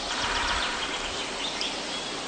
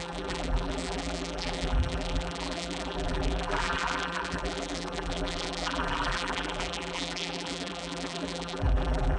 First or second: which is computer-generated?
second